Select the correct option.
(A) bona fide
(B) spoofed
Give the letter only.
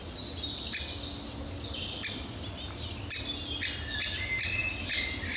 A